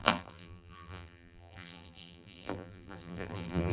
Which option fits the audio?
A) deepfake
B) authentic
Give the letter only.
A